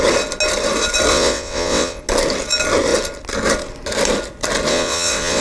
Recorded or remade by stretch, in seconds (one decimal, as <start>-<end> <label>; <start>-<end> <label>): 0.0-1.1 recorded; 1.1-2.0 remade; 2.0-4.7 recorded; 4.7-5.4 remade